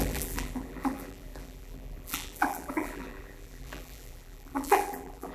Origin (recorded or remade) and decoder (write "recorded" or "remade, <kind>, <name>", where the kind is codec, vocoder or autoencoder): remade, vocoder, BigVGAN v2